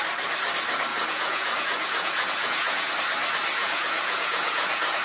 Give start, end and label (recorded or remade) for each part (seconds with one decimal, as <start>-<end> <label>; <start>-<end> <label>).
0.0-0.9 recorded; 0.9-2.9 remade; 2.9-3.6 recorded; 3.6-5.0 remade